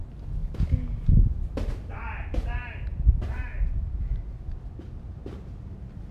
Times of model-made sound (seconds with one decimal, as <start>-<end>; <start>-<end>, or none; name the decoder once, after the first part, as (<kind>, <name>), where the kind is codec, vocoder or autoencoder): 2.9-4.0 (vocoder, BigVGAN v2)